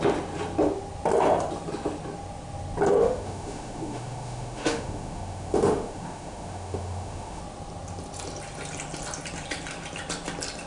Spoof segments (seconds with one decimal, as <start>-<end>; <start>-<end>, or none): 3.0-7.4